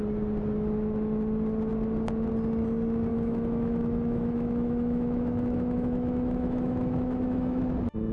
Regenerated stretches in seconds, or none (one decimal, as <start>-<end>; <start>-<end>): 3.1-7.6

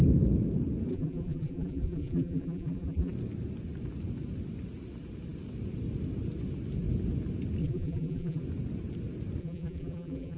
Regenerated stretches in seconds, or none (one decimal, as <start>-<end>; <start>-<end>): 0.9-3.1; 7.6-8.4; 9.4-10.4